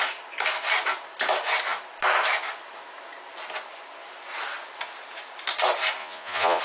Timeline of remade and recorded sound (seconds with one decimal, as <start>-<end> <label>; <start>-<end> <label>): 0.0-6.0 recorded; 6.0-6.6 remade